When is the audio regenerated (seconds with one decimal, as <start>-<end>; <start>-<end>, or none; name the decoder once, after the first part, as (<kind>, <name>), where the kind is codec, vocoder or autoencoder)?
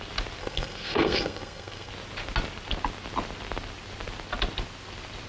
0.4-1.9 (codec, SNAC)